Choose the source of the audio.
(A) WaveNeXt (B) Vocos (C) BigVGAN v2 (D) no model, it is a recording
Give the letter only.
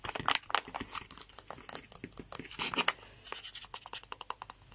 D